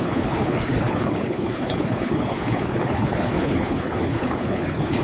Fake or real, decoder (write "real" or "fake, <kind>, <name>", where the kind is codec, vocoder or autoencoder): fake, codec, HILCodec